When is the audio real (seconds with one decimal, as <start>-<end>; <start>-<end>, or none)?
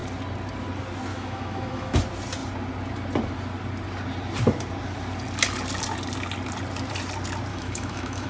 0.0-1.1; 2.0-7.5